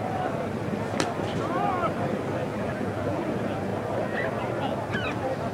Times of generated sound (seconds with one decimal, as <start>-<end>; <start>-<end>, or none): 2.4-3.2